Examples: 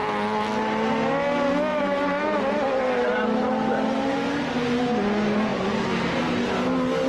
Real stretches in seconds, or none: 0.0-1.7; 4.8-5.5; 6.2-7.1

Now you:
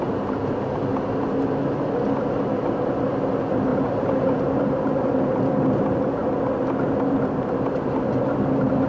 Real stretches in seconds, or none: 0.0-3.7; 5.2-8.9

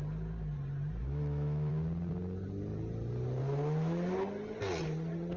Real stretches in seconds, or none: 0.0-1.0; 1.7-5.4

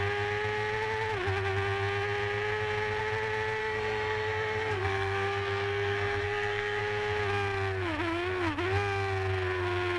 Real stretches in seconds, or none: 0.0-3.6; 6.8-10.0

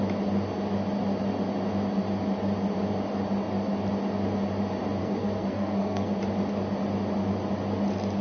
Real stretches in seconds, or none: 0.0-5.0; 6.2-8.2

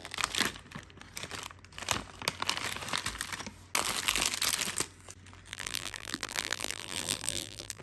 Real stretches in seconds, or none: 0.0-5.5

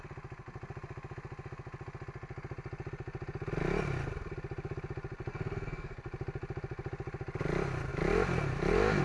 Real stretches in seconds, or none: 0.0-5.3; 6.0-9.0